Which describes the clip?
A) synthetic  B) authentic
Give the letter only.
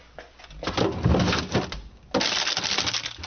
B